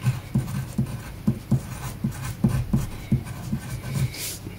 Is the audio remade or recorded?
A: recorded